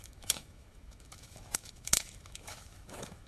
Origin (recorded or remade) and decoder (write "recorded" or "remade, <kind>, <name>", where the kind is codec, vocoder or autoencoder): remade, autoencoder, DAC-VAE